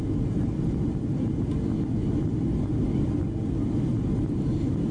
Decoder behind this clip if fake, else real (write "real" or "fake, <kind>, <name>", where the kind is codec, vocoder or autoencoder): real